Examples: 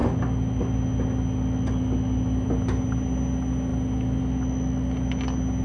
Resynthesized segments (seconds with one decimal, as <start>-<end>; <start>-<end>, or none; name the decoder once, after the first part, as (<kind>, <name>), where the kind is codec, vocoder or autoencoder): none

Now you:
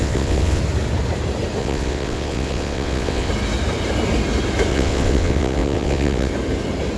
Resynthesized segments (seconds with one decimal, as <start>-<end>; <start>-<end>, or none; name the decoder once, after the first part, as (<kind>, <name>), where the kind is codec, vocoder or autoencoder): 0.0-0.6 (vocoder, WaveNeXt); 1.6-3.3; 4.7-6.3

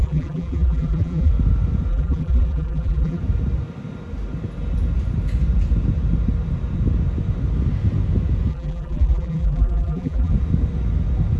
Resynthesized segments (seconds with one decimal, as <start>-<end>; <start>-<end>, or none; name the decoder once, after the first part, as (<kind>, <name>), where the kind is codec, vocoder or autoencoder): 0.0-1.3 (vocoder, BigVGAN v2); 1.9-3.2; 8.5-10.3

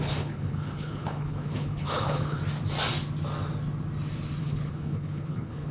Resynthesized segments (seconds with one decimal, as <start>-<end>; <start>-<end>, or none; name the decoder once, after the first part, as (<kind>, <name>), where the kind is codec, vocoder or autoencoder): 0.0-2.4 (codec, HILCodec); 4.4-5.7

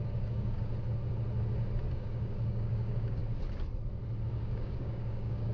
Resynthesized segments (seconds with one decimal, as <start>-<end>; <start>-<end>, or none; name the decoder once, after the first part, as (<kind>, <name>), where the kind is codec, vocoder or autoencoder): 0.0-0.7 (codec, DAC); 1.9-3.2; 4.3-5.5

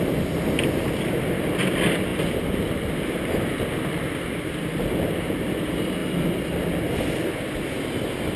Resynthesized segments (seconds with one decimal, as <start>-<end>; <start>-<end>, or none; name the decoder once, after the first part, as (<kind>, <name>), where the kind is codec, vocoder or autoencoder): none